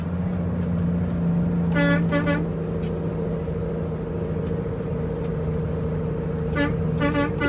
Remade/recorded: recorded